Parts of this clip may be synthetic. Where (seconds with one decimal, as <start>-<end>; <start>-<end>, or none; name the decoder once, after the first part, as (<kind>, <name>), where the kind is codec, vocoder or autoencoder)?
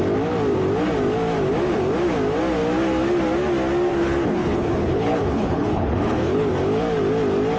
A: 3.9-6.5 (codec, HILCodec)